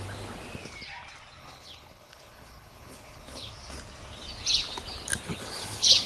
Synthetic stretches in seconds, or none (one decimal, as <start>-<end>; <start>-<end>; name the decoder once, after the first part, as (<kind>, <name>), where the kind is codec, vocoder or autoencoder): 1.4-3.5 (codec, HILCodec); 5.3-6.1